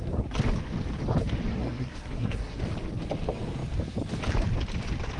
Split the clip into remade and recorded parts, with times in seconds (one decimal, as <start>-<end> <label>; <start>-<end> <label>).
0.0-1.5 recorded; 1.5-2.6 remade; 2.6-5.2 recorded

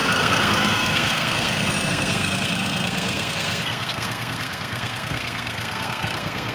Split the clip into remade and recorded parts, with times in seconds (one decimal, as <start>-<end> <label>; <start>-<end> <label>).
0.0-6.5 remade

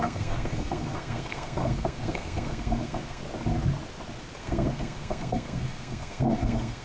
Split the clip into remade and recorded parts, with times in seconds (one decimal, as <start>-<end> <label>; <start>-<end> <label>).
0.0-3.2 remade; 3.2-4.4 recorded; 4.4-6.8 remade

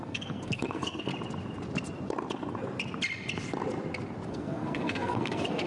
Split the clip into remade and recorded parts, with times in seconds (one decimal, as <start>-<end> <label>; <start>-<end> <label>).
0.0-1.1 remade; 1.1-4.3 recorded; 4.3-5.7 remade

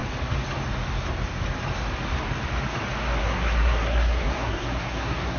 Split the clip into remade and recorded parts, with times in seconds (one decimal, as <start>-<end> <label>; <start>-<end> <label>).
0.0-3.2 recorded; 3.2-5.4 remade

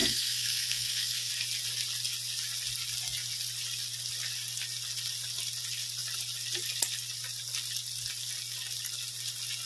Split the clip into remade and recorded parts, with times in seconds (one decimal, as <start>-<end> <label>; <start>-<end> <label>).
0.0-1.3 remade; 1.3-9.7 recorded

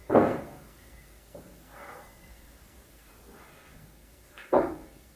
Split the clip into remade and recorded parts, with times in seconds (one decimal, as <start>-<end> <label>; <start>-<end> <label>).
0.0-3.1 remade; 3.1-3.5 recorded; 3.5-5.2 remade

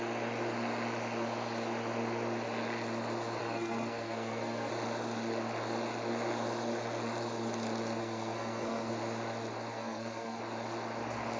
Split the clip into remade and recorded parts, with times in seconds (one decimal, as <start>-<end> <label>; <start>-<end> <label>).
0.0-3.4 recorded; 3.4-4.7 remade; 4.7-8.0 recorded; 8.0-8.9 remade; 8.9-9.7 recorded; 9.7-10.4 remade; 10.4-11.4 recorded